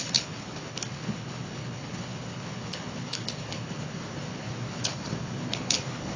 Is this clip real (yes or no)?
no